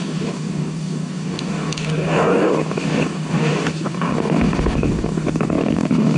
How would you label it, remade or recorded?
remade